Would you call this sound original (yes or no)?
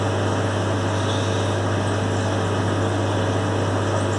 yes